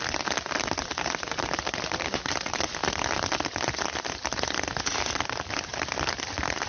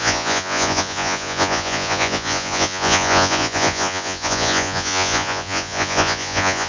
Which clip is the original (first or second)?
first